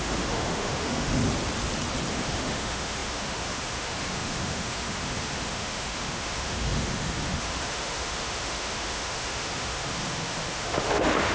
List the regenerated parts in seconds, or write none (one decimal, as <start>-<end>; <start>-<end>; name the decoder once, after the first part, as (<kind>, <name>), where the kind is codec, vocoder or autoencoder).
0.0-1.2 (autoencoder, DAC-VAE); 2.1-11.3